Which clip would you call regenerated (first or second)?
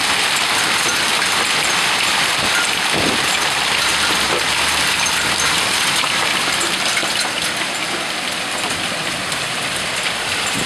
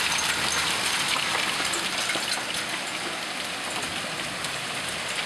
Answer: first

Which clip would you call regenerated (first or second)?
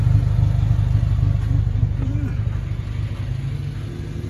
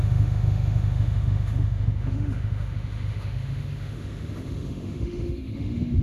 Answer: second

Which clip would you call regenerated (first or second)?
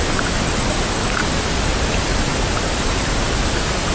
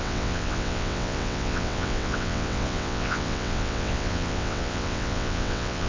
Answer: second